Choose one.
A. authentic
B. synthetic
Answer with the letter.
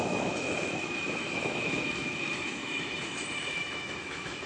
B